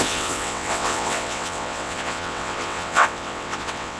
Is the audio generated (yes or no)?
yes